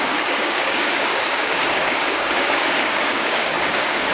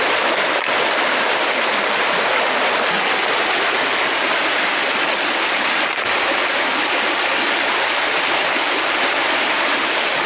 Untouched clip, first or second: second